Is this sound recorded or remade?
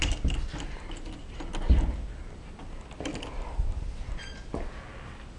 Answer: recorded